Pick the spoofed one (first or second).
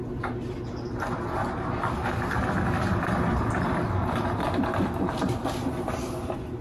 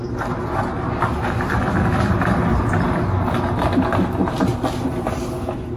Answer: first